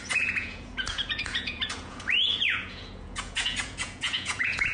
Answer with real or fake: fake